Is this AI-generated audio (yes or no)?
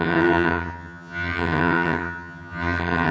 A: yes